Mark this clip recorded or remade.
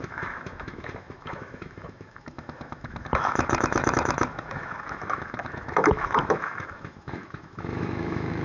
remade